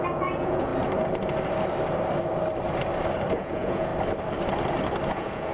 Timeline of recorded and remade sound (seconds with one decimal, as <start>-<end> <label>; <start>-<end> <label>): 0.0-0.7 remade; 0.7-3.3 recorded; 3.3-3.9 remade; 3.9-5.1 recorded; 5.1-5.5 remade